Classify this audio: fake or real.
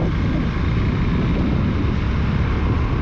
real